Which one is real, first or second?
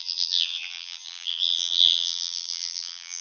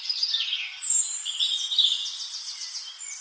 second